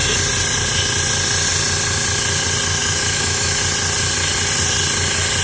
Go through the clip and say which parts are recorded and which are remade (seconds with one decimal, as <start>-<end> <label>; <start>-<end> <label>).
0.0-2.8 recorded; 2.8-3.6 remade; 3.6-5.4 recorded